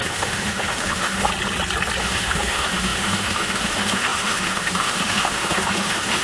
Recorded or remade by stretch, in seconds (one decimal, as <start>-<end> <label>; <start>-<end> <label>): 0.0-1.3 remade; 1.3-2.0 recorded; 2.0-6.2 remade

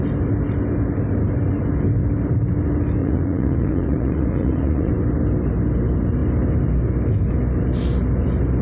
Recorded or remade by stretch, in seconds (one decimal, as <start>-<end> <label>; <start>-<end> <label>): 0.0-3.0 recorded; 3.0-4.9 remade; 4.9-8.6 recorded

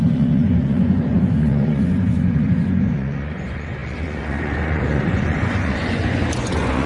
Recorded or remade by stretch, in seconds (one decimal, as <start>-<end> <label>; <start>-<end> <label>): 0.0-6.9 remade

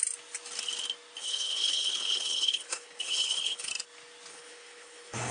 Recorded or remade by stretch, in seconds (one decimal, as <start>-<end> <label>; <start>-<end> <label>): 0.0-1.2 recorded; 1.2-3.7 remade; 3.7-4.3 recorded; 4.3-5.3 remade

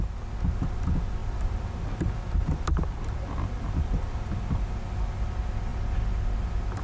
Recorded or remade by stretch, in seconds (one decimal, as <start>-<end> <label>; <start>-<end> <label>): 0.0-1.2 recorded; 1.2-4.4 remade; 4.4-6.8 recorded

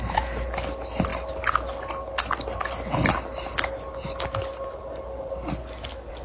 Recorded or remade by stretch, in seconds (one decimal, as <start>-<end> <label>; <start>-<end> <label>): 0.0-6.2 recorded